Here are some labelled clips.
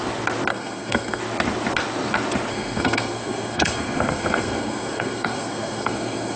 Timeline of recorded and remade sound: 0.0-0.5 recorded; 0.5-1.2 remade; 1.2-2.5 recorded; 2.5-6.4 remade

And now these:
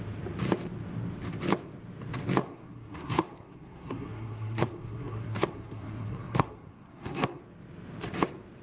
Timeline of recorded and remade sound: 0.0-2.4 recorded; 2.4-7.4 remade; 7.4-8.6 recorded

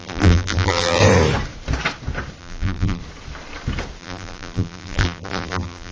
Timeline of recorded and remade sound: 0.0-1.0 remade; 1.0-2.4 recorded; 2.4-3.0 remade; 3.0-4.0 recorded; 4.0-5.9 remade

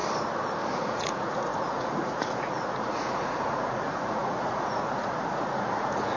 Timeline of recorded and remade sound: 0.0-0.7 recorded; 0.7-6.2 remade

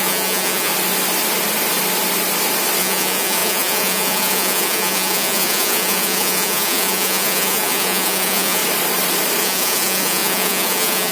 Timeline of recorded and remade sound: 0.0-0.7 remade; 0.7-2.8 recorded; 2.8-8.6 remade; 8.6-9.4 recorded; 9.4-11.1 remade

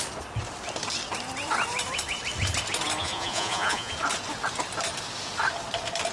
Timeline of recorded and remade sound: 0.0-3.0 recorded; 3.0-3.9 remade; 3.9-6.1 recorded

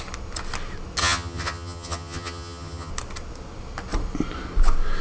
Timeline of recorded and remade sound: 0.0-1.0 recorded; 1.0-2.9 remade; 2.9-5.0 recorded